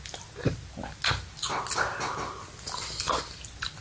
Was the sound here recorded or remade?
recorded